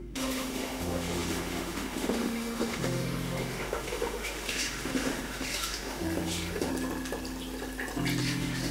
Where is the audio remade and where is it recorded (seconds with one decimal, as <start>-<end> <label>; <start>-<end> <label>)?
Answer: 0.0-6.7 remade; 6.7-8.2 recorded; 8.2-8.7 remade